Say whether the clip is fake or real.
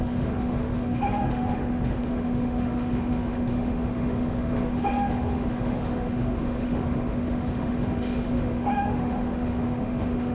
fake